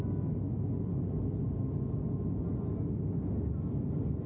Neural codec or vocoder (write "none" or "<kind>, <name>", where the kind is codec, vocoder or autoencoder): none